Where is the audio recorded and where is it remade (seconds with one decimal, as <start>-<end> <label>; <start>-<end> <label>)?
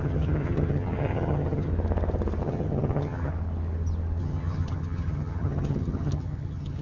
0.0-1.7 remade; 1.7-2.4 recorded; 2.4-3.3 remade; 3.3-4.2 recorded; 4.2-6.8 remade